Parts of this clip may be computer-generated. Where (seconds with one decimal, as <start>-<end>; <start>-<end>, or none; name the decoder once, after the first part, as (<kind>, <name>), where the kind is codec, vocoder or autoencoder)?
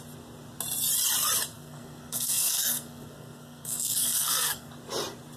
1.5-4.7 (codec, SNAC)